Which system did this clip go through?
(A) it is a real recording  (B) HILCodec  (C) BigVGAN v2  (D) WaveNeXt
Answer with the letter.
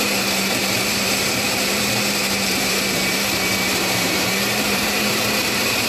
C